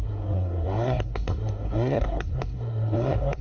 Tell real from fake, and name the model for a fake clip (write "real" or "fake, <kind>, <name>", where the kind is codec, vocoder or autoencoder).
fake, codec, SNAC